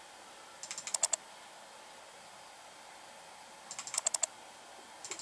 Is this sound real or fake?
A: real